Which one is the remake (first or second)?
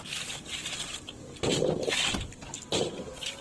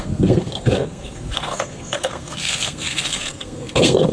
second